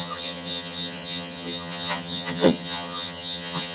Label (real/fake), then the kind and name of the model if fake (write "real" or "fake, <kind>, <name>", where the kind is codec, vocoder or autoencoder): fake, vocoder, HiFi-GAN